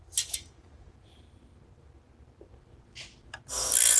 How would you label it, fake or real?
real